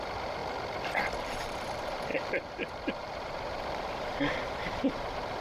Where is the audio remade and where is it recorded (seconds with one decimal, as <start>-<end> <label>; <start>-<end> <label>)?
0.0-0.4 remade; 0.4-1.2 recorded; 1.2-5.4 remade

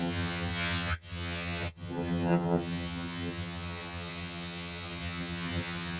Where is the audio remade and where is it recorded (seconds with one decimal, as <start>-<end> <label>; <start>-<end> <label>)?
0.0-6.0 remade

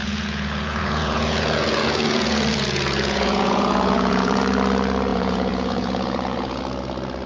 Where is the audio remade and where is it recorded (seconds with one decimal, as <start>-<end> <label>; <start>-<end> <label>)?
0.0-4.4 remade; 4.4-5.1 recorded; 5.1-6.6 remade; 6.6-7.3 recorded

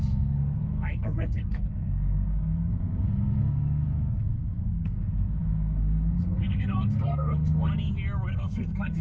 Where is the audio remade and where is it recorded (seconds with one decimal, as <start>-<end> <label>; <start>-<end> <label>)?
0.0-7.7 remade; 7.7-8.3 recorded; 8.3-9.0 remade

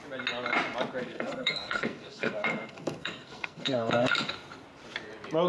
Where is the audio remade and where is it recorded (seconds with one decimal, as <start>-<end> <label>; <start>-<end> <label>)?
0.0-1.0 recorded; 1.0-4.3 remade; 4.3-5.5 recorded

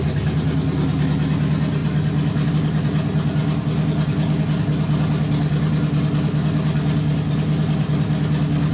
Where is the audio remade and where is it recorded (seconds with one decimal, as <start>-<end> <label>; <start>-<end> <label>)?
0.0-8.7 recorded

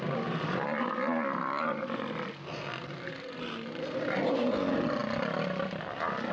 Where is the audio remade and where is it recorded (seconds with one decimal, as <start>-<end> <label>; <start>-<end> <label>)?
0.0-6.3 recorded

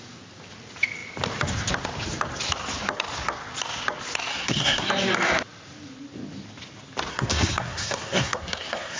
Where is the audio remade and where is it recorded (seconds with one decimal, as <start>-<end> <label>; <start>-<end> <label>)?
0.0-4.3 recorded; 4.3-4.9 remade; 4.9-7.1 recorded; 7.1-9.0 remade